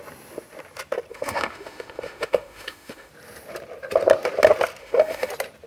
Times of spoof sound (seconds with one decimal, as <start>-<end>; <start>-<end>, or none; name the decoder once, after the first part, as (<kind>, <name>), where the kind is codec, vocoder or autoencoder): 1.1-3.1 (autoencoder, DAC-VAE); 4.8-5.3